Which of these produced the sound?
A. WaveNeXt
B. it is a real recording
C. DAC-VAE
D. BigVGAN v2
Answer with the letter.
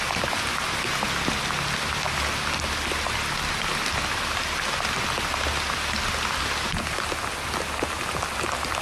B